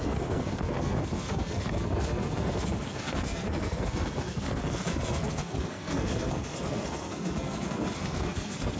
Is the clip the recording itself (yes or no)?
no